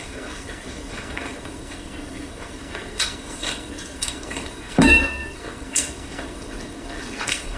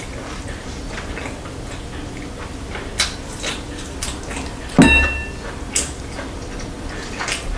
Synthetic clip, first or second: first